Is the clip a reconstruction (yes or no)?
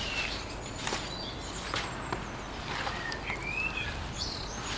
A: no